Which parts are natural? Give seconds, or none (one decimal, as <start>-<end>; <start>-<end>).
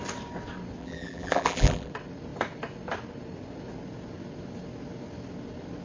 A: 0.0-0.8; 1.9-5.8